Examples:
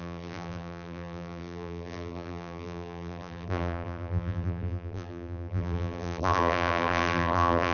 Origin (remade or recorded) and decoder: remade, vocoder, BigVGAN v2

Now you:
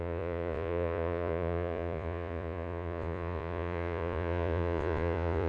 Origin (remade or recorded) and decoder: remade, vocoder, Vocos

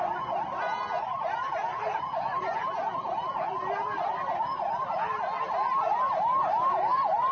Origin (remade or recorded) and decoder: recorded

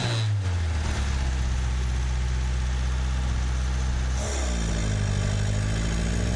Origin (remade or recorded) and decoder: recorded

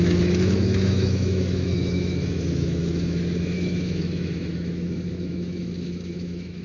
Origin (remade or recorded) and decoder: remade, autoencoder, DAC-VAE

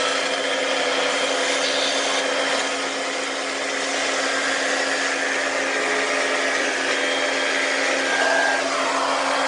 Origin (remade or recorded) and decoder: recorded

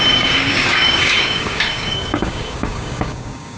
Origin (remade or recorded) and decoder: remade, codec, DAC